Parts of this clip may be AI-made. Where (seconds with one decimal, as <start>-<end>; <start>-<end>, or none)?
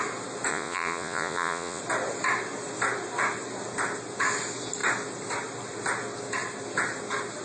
0.5-1.8